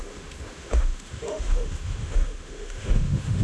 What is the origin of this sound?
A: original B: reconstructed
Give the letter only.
B